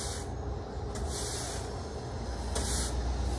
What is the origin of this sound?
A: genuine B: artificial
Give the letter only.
A